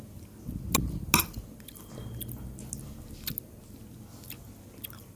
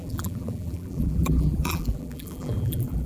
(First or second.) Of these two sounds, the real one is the first